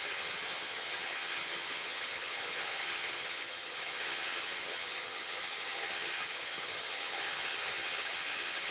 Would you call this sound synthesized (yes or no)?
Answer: yes